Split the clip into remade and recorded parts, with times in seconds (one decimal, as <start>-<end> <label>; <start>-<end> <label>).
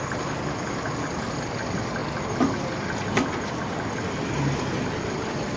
0.0-5.6 recorded